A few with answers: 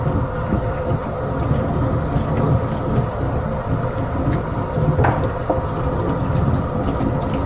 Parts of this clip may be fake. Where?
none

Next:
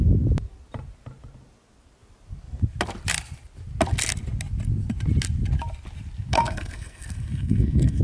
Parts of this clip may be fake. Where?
6.3-8.0 (codec, SNAC)